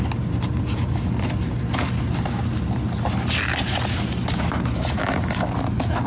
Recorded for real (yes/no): yes